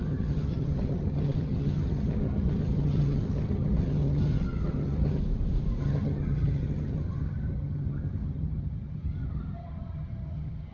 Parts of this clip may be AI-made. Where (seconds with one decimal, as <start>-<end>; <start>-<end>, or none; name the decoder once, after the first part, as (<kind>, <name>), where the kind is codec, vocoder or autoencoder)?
0.0-5.2 (vocoder, HiFi-GAN); 5.8-10.7